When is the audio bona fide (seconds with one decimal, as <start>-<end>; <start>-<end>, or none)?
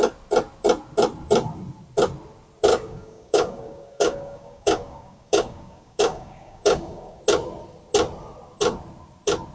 0.0-2.7; 7.2-9.5